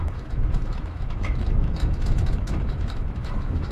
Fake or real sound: fake